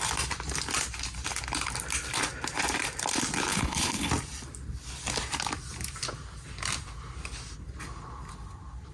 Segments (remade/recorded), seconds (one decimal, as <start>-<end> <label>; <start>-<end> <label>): 0.0-3.5 recorded; 3.5-4.1 remade; 4.1-8.9 recorded